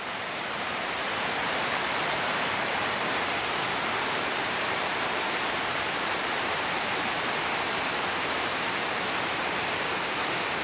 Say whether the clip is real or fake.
fake